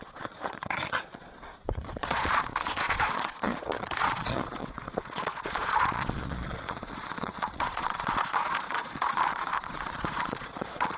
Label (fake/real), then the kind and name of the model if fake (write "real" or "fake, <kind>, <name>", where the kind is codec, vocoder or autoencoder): fake, vocoder, Vocos